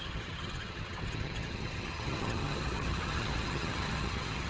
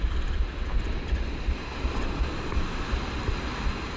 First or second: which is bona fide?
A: second